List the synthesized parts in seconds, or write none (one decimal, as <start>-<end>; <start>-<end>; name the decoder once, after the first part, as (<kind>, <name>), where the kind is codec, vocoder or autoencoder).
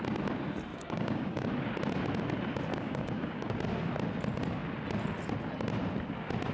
0.7-1.5 (codec, DAC); 2.7-3.5